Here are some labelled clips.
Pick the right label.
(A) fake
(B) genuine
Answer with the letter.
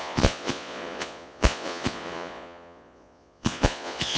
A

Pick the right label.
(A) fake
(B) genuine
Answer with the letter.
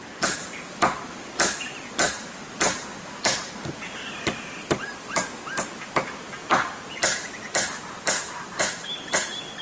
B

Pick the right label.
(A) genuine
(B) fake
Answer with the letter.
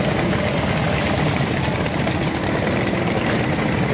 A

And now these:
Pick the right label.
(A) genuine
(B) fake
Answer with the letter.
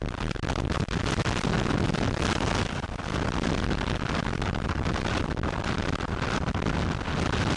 A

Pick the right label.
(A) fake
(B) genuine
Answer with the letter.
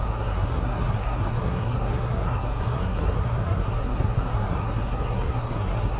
A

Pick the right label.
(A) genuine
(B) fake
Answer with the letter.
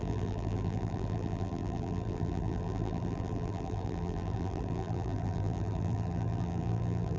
B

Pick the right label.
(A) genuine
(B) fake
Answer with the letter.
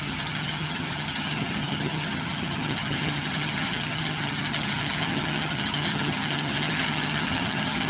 B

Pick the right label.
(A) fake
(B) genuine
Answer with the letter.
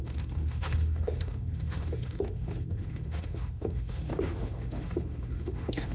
A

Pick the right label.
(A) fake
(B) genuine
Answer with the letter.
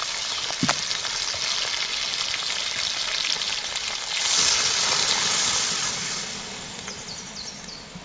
B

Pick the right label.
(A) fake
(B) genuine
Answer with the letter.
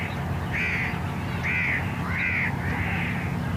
B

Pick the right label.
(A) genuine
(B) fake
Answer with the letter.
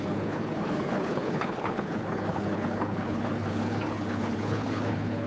B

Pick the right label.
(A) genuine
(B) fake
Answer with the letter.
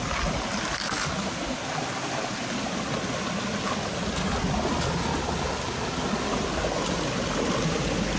A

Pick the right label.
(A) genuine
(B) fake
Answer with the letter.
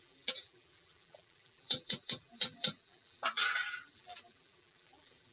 B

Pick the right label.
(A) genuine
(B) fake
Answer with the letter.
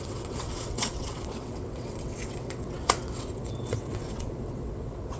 B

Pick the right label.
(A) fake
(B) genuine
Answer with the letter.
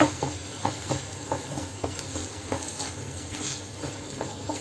A